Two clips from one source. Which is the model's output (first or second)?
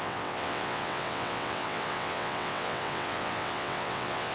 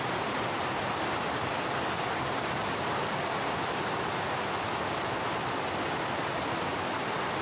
first